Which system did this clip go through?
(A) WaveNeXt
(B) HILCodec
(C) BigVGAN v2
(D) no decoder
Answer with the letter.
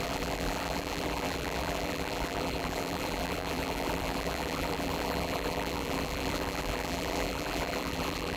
C